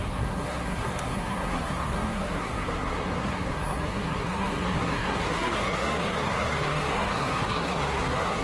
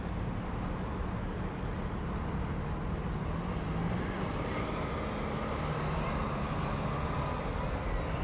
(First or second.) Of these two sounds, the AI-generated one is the first